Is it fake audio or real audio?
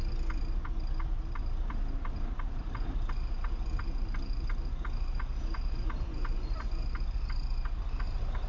real